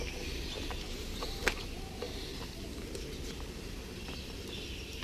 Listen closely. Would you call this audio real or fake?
real